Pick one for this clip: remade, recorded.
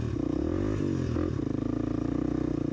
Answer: recorded